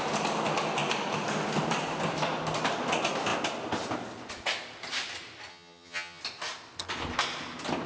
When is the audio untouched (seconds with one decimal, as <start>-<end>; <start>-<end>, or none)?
0.0-5.5; 6.2-7.9